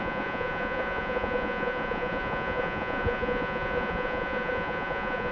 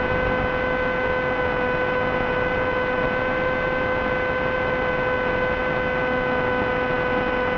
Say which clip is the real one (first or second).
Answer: second